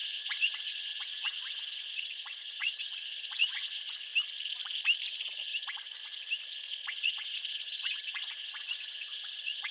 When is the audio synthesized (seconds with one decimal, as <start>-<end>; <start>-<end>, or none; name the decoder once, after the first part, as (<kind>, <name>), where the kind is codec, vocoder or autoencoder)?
0.0-4.1 (vocoder, Vocos); 5.1-5.5; 6.9-9.7